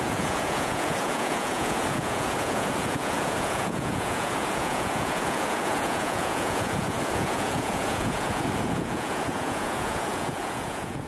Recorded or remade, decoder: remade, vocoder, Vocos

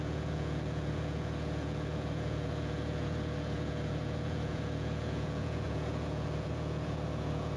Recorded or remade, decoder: remade, vocoder, Vocos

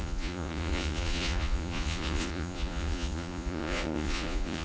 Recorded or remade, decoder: remade, vocoder, Vocos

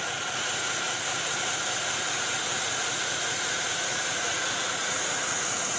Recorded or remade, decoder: remade, vocoder, Vocos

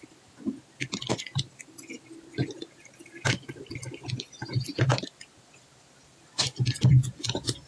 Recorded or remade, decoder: recorded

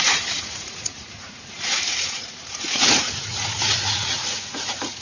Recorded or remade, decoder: remade, vocoder, Vocos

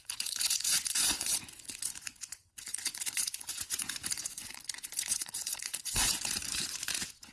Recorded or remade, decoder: remade, vocoder, Vocos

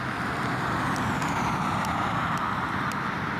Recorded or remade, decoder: recorded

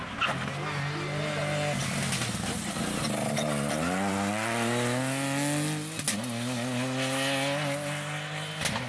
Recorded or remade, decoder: recorded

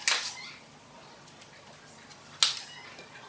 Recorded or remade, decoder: recorded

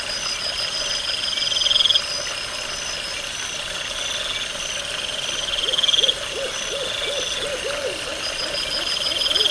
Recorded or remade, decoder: recorded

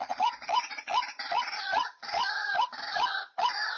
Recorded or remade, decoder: remade, vocoder, Vocos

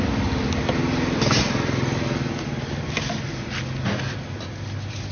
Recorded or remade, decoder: recorded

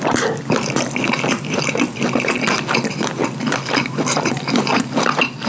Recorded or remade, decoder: recorded